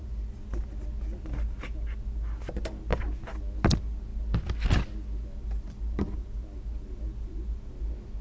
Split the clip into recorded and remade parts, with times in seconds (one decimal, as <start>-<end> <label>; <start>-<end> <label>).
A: 0.0-8.2 recorded